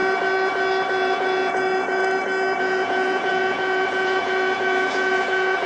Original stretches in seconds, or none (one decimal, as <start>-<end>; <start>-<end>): 0.0-0.9; 2.0-2.6